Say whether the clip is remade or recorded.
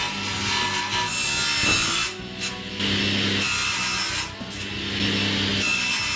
recorded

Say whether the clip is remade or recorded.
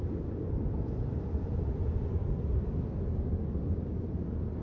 recorded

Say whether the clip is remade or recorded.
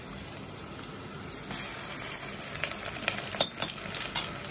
recorded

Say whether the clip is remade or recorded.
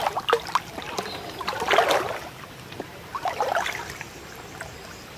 remade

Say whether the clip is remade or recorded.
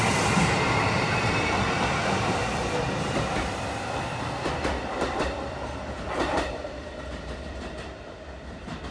remade